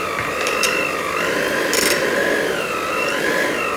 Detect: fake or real real